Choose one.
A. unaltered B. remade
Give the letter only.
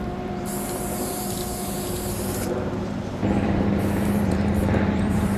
B